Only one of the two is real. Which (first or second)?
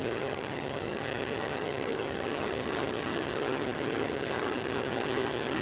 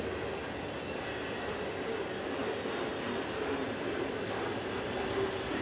second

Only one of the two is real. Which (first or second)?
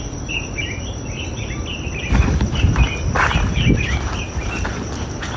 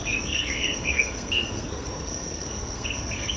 first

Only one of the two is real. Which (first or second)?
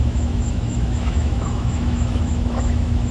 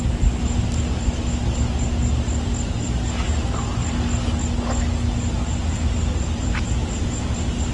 second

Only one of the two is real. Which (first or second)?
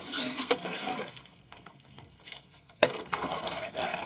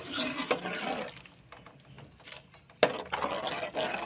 second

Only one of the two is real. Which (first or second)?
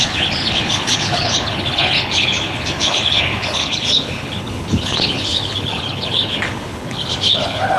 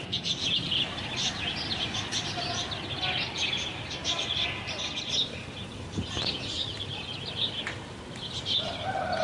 second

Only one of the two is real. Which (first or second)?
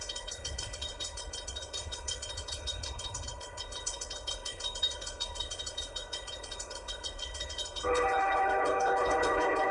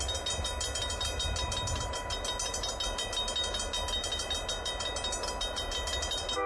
second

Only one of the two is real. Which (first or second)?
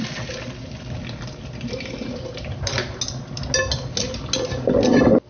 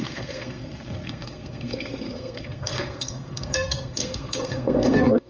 first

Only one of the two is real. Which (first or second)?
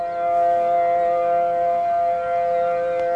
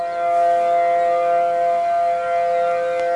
second